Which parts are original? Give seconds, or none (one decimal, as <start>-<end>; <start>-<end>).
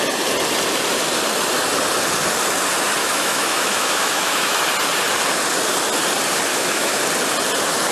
0.0-3.0; 4.6-6.5; 7.0-7.9